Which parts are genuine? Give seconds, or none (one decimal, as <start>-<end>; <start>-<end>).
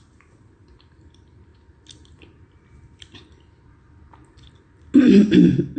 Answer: 0.0-5.8